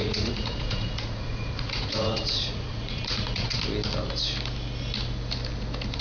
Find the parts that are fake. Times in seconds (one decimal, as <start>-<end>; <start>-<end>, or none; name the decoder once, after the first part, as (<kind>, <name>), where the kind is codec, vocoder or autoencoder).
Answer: 0.0-3.6 (vocoder, Vocos)